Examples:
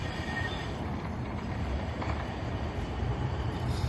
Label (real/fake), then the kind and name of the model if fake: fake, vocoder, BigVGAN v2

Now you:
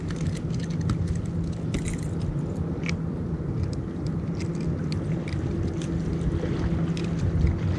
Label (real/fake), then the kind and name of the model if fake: real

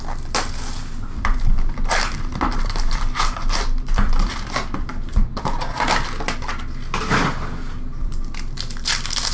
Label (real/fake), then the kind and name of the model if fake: real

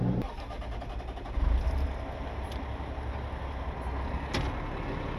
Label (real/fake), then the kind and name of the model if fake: real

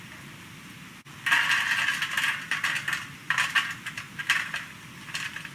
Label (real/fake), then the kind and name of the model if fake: real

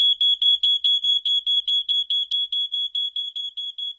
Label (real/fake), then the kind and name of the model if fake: real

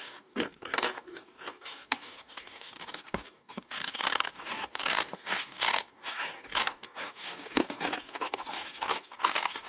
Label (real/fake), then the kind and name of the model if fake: fake, codec, DAC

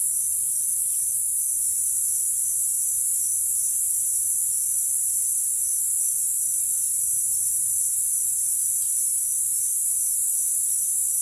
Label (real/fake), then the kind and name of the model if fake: fake, vocoder, BigVGAN v2